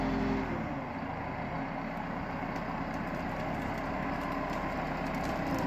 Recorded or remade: recorded